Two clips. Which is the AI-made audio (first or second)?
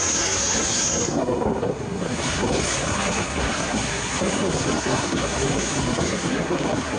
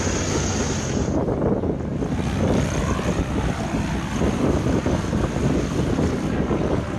first